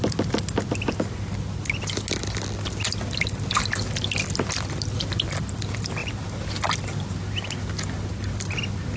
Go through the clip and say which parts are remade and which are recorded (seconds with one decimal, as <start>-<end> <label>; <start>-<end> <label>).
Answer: 0.0-9.0 recorded